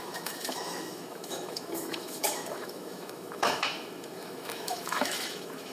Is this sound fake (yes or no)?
yes